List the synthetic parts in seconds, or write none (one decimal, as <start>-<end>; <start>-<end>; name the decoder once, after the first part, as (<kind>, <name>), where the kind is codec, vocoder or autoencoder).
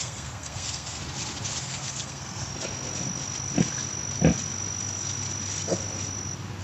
0.0-1.0 (codec, SNAC); 1.6-2.5